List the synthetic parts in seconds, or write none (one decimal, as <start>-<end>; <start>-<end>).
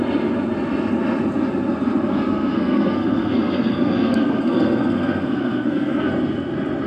2.1-6.1